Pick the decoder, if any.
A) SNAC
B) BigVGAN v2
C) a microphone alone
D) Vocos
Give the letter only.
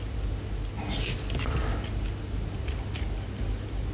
C